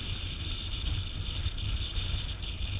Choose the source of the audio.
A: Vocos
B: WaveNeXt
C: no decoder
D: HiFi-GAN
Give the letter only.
C